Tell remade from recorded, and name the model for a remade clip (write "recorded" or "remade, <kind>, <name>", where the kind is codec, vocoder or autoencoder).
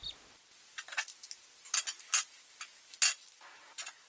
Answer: recorded